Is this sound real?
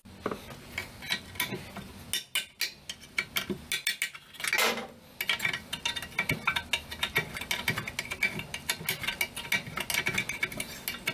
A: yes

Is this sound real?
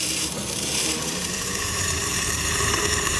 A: no